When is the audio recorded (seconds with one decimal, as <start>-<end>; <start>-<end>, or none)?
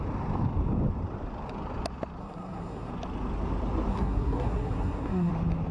0.0-2.2; 2.9-3.9; 5.3-5.7